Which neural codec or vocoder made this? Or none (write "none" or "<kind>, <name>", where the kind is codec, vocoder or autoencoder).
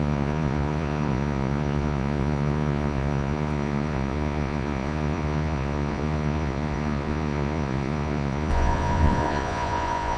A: vocoder, Vocos